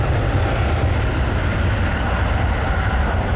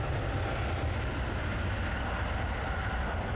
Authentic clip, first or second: second